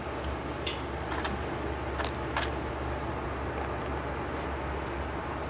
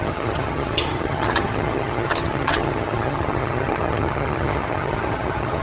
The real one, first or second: first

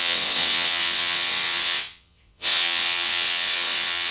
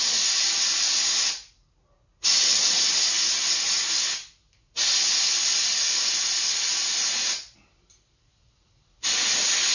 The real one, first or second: second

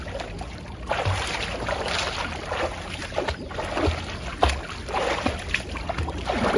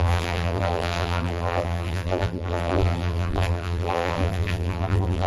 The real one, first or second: first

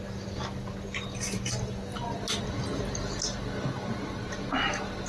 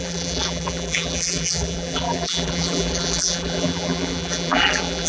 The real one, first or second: first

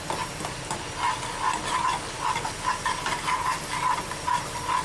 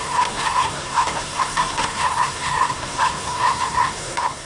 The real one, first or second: first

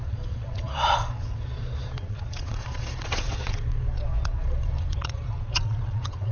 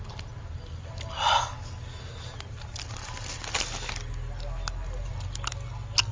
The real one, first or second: second